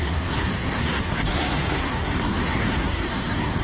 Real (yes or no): no